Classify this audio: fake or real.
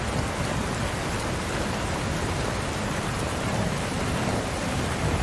real